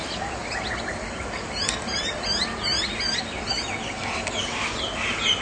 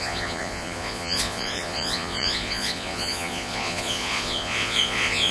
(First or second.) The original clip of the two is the first